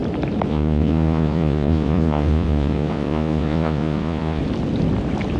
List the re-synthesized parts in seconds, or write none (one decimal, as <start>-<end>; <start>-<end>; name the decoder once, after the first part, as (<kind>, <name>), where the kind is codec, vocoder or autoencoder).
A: 0.5-4.4 (vocoder, Vocos)